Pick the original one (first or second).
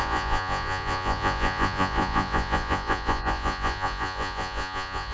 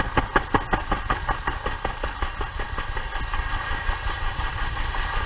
second